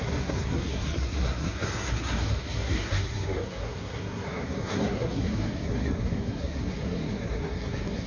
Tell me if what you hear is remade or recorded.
remade